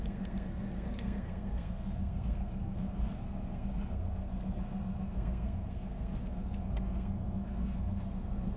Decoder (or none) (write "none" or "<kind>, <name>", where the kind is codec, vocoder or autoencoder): codec, SNAC